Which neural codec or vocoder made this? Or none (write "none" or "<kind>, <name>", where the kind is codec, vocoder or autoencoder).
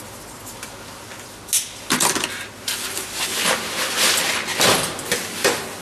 none